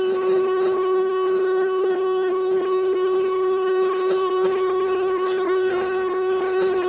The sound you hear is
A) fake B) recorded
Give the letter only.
A